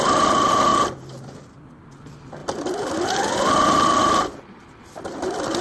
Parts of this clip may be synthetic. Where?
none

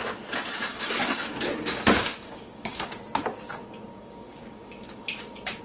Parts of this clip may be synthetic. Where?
0.7-2.9; 3.9-5.6

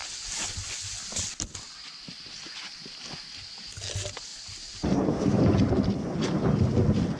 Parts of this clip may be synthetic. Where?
4.3-5.7

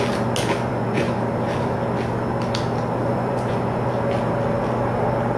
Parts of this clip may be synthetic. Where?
0.7-1.2; 3.1-3.9

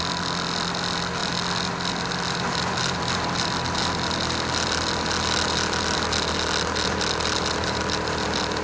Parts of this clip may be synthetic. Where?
none